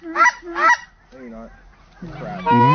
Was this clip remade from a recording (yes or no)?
no